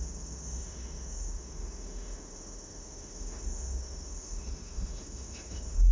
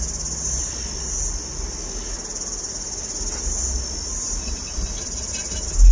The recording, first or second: second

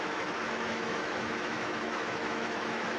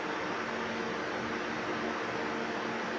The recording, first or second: second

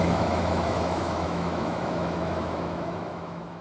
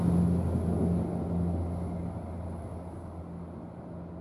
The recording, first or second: second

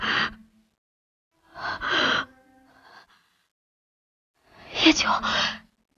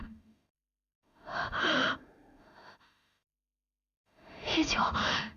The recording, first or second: first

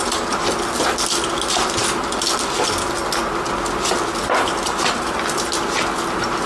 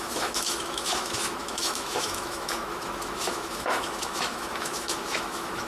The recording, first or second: first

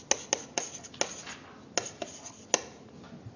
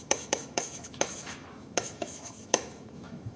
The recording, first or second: first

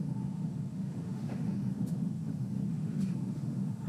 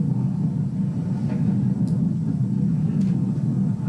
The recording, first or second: second